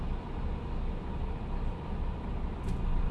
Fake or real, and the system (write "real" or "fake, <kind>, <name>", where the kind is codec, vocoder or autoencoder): real